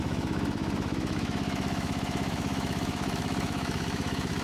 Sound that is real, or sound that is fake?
fake